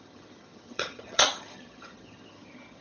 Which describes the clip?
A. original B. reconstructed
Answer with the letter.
B